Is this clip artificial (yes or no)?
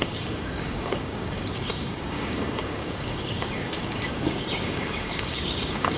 yes